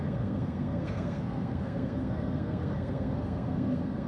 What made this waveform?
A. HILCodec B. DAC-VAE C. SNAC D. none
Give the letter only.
C